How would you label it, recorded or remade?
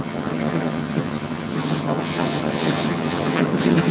remade